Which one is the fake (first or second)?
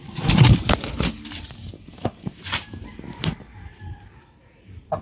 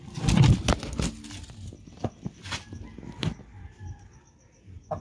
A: first